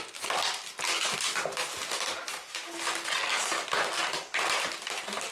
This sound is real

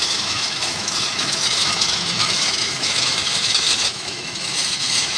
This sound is fake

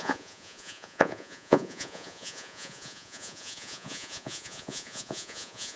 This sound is fake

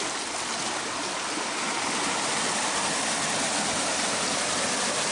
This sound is real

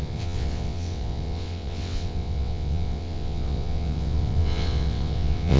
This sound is fake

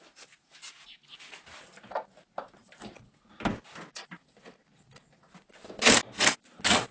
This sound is real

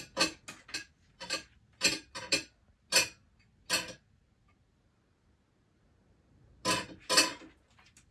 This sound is real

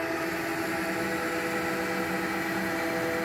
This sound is real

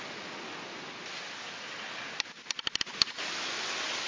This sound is real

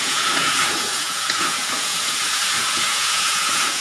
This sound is fake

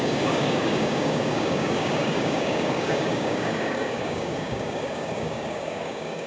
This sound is fake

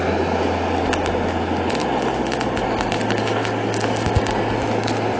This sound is real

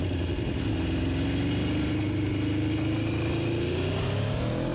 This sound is real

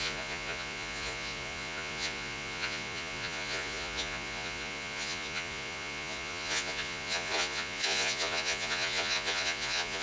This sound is fake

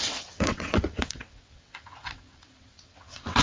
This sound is fake